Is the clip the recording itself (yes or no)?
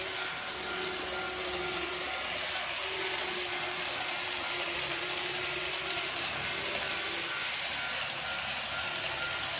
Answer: yes